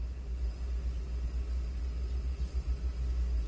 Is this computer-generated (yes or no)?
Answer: no